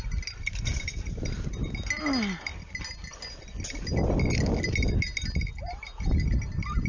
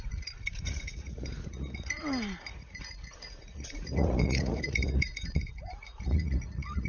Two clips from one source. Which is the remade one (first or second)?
second